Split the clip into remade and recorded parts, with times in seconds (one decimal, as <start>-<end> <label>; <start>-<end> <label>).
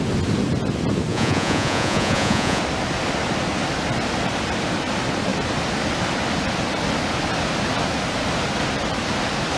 0.0-1.1 recorded; 1.1-2.6 remade; 2.6-9.6 recorded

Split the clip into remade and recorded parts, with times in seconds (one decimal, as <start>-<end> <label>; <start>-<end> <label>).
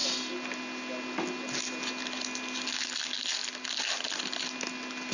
0.0-5.1 recorded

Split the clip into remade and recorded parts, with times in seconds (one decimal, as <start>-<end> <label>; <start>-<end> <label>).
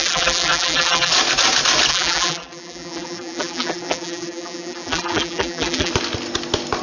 0.0-1.1 remade; 1.1-1.9 recorded; 1.9-5.9 remade; 5.9-6.8 recorded